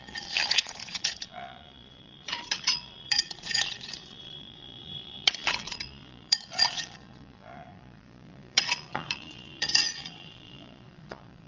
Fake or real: fake